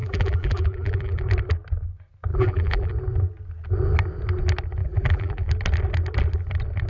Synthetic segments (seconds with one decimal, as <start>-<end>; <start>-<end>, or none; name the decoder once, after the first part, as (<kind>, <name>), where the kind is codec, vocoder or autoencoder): 0.0-1.2 (vocoder, BigVGAN v2); 2.3-2.9; 4.8-5.5